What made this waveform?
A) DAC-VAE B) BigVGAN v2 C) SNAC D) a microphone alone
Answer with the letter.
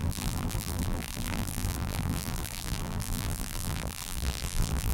B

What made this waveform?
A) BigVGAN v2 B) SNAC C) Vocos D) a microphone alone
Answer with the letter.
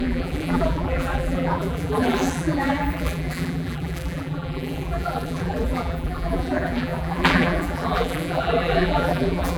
A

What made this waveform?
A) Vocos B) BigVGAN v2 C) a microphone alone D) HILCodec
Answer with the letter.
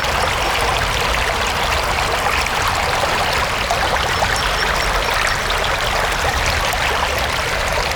C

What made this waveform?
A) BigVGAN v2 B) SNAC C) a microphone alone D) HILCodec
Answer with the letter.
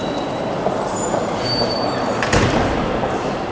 A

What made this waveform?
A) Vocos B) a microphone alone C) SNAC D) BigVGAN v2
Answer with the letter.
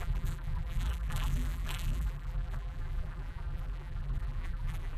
D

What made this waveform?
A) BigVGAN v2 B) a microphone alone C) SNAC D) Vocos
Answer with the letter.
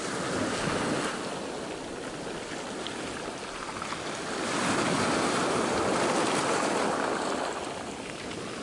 B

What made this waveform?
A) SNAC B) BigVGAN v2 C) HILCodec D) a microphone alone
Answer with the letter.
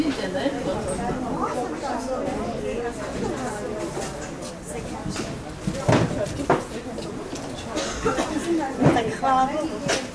D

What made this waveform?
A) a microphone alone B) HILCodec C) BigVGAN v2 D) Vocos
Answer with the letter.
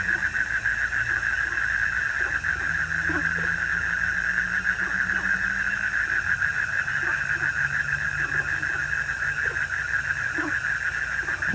A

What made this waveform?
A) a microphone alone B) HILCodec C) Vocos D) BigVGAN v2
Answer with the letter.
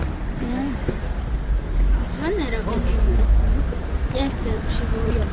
D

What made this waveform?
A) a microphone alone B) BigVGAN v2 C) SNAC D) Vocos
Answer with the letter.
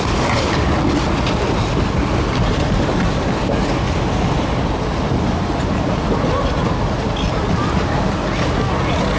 A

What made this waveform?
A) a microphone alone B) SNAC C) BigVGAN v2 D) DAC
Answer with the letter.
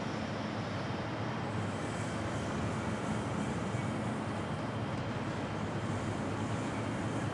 A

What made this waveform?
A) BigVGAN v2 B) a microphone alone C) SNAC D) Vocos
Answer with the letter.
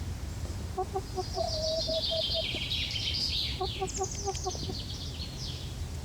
B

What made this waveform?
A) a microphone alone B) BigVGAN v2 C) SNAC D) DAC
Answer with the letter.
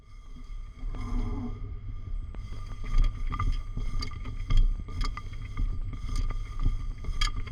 A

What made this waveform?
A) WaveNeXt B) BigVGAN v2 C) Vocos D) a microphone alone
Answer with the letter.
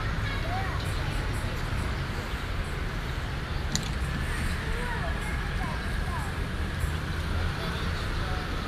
D